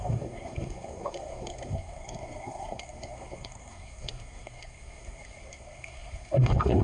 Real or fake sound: fake